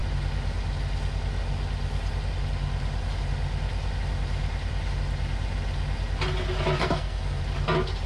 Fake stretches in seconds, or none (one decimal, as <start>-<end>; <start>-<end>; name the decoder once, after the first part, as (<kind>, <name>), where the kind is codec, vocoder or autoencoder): 6.8-7.4 (codec, SNAC)